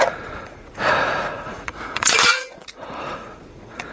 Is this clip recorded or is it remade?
remade